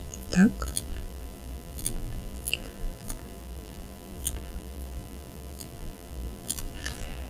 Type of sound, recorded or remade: remade